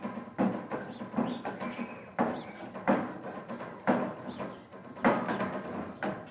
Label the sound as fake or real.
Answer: real